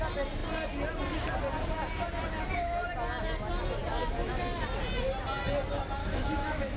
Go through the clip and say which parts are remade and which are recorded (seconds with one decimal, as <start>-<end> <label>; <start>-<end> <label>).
0.0-6.0 recorded; 6.0-6.8 remade